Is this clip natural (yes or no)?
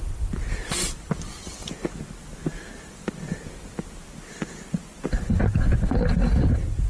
yes